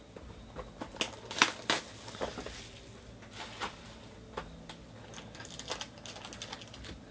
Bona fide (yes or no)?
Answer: yes